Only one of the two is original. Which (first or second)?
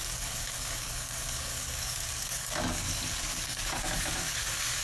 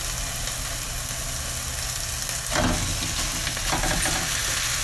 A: second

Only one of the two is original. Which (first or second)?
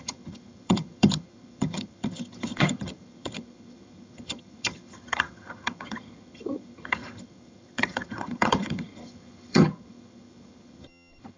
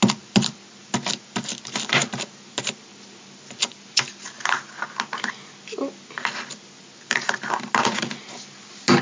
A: second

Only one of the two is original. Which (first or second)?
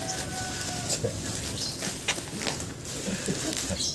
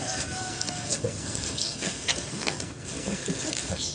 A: first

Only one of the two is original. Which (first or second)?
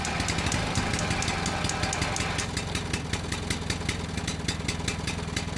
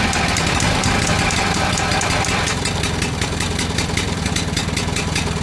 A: first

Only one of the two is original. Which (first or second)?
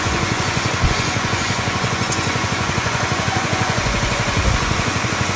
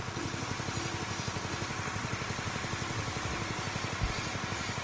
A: second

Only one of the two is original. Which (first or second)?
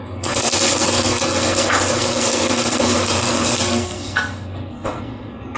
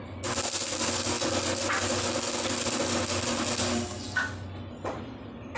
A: second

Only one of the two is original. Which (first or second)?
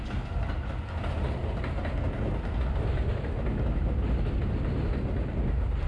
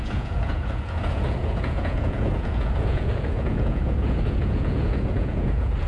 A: first